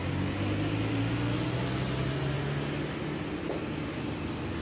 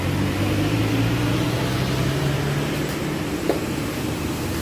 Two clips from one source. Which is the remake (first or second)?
second